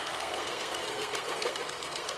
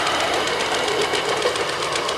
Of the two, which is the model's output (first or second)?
first